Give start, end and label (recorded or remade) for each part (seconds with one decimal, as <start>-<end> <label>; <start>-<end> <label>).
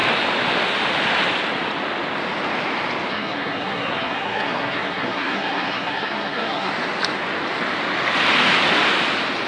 0.0-3.1 recorded; 3.1-6.7 remade; 6.7-9.5 recorded